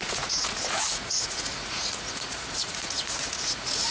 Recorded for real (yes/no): no